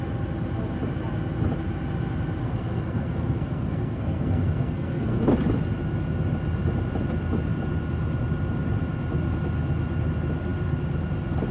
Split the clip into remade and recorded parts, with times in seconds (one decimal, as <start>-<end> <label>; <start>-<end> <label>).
0.0-2.4 recorded; 2.4-5.2 remade; 5.2-11.5 recorded